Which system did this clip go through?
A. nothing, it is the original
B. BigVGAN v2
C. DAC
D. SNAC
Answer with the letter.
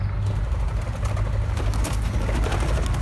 A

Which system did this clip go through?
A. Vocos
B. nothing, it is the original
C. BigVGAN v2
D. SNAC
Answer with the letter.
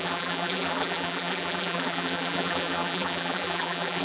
C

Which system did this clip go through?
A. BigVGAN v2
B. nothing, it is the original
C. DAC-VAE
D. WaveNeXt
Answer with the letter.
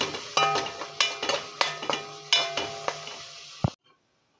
B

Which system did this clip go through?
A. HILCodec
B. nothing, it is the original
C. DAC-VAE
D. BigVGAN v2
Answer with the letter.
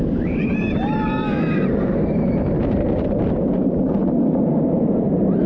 D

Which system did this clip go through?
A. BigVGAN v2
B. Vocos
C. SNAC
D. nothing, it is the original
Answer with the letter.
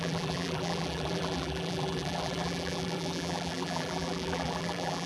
A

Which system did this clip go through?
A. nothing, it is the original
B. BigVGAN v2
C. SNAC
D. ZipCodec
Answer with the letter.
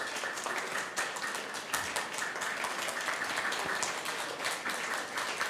A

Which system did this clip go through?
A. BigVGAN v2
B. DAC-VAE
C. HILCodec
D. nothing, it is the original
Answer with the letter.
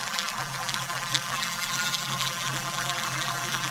A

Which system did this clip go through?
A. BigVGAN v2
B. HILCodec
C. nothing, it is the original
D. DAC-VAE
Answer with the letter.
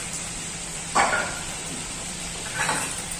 A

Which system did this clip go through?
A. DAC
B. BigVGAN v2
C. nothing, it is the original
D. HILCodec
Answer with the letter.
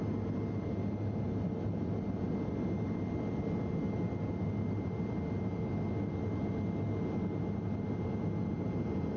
C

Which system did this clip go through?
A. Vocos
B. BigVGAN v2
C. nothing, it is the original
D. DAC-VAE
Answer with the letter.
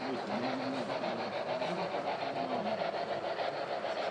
B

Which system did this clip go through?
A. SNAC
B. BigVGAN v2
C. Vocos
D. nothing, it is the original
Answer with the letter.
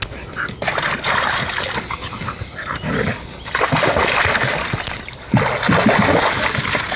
D